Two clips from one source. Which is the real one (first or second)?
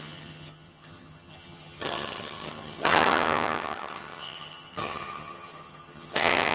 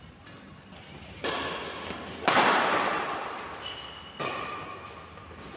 second